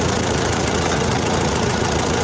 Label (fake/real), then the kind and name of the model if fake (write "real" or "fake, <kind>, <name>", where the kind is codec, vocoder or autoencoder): fake, vocoder, Vocos